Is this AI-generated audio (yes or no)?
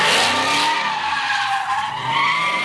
no